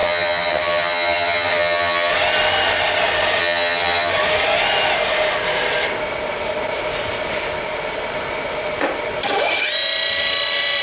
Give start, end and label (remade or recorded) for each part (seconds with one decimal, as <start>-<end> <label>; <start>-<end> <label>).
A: 0.0-2.1 remade; 2.1-3.4 recorded; 3.4-4.1 remade; 4.1-10.8 recorded